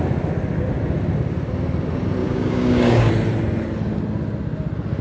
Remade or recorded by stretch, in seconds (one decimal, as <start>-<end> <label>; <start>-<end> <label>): 0.0-2.2 recorded; 2.2-3.1 remade; 3.1-5.0 recorded